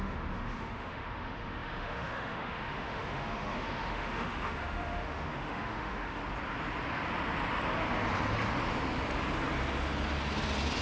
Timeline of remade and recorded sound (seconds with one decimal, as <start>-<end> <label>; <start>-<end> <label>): 0.0-6.2 remade; 6.2-10.8 recorded